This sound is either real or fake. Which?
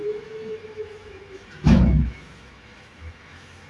fake